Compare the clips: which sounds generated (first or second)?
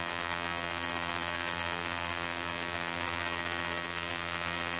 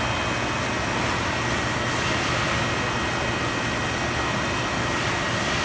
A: first